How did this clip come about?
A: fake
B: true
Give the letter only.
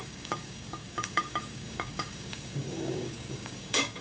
A